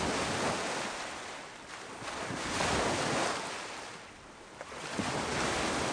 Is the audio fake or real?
real